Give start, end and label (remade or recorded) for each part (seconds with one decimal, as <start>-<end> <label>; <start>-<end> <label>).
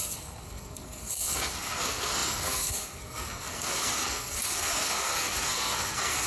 0.0-6.3 remade